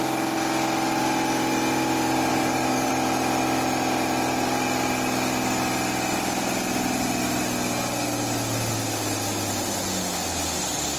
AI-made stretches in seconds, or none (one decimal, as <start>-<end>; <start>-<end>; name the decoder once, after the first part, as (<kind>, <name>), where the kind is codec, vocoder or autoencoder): 2.3-2.9 (codec, DAC)

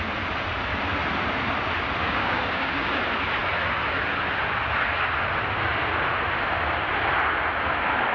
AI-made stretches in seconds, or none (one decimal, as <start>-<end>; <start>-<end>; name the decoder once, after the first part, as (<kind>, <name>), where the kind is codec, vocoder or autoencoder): 2.0-3.0 (codec, DAC)

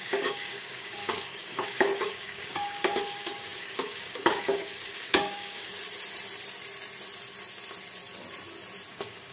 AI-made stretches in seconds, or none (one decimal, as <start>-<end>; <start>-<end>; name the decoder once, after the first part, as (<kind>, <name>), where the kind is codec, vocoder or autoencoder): 0.0-5.7 (codec, DAC); 8.9-9.3

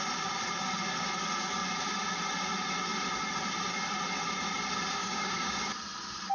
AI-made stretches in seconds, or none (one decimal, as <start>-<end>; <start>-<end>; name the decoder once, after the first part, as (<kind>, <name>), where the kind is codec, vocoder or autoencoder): 5.0-5.7 (codec, DAC)